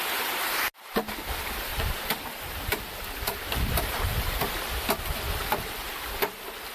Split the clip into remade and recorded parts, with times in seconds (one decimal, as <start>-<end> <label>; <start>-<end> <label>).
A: 0.0-1.7 recorded; 1.7-4.4 remade; 4.4-6.7 recorded